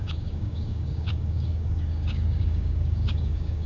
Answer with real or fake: fake